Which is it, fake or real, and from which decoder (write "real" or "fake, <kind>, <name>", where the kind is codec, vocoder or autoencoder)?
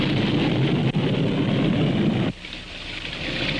real